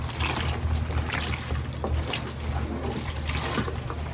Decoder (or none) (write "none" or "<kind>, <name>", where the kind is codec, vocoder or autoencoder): none